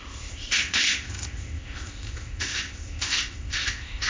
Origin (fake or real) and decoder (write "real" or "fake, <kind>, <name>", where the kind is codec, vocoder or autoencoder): fake, codec, ZipCodec